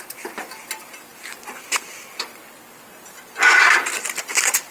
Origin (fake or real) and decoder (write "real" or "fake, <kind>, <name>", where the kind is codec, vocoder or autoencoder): real